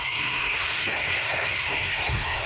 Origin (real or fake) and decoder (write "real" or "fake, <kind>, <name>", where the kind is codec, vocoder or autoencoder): fake, codec, SNAC